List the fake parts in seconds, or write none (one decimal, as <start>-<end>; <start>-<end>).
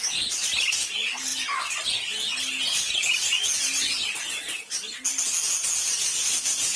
none